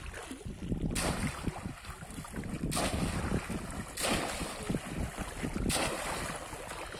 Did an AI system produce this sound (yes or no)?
no